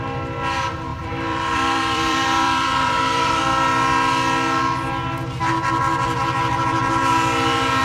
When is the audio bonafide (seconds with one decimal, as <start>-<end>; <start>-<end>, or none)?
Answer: 0.0-0.9; 3.4-7.8